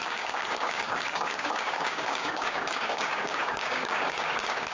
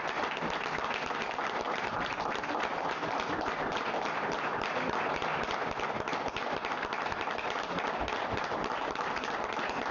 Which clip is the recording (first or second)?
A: second